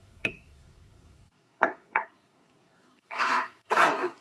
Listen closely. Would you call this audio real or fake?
fake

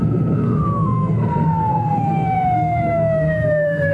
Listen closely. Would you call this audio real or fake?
fake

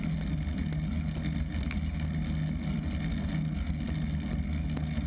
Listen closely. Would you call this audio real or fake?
real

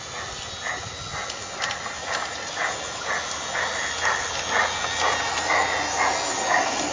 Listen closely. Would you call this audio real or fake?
real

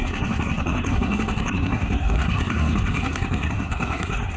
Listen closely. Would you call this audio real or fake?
fake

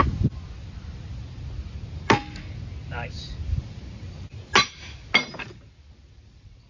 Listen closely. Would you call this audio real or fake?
real